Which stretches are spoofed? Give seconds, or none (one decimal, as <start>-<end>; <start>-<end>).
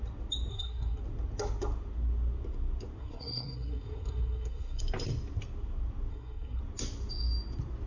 0.5-1.0; 3.0-4.8; 6.1-6.6